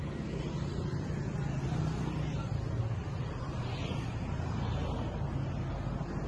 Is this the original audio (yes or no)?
yes